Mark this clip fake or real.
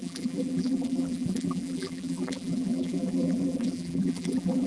fake